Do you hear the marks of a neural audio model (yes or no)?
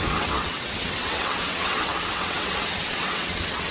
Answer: yes